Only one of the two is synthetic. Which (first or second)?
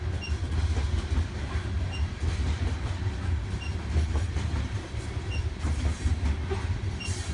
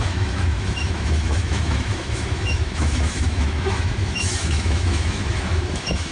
second